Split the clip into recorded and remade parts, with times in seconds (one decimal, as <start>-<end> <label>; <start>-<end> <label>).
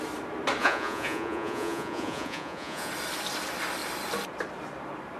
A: 0.0-0.6 recorded; 0.6-2.9 remade; 2.9-5.2 recorded